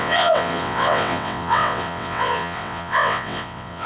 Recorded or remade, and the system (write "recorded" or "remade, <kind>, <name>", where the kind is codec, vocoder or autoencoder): remade, vocoder, WaveNeXt